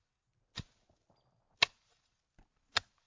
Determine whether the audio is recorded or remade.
recorded